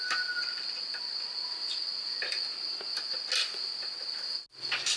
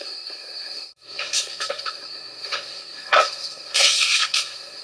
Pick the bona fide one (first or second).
first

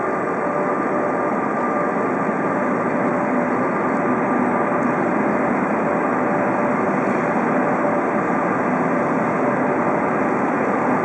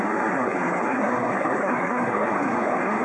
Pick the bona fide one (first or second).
first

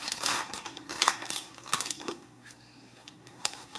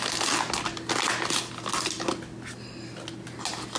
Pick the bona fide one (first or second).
second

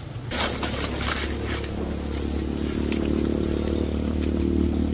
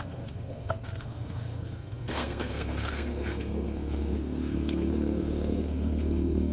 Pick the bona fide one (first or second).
first